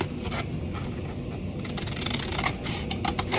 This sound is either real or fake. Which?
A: real